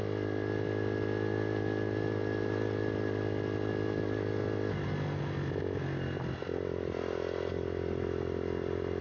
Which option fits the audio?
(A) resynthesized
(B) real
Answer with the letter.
B